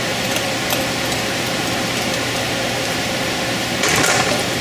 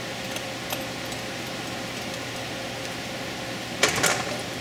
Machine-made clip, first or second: first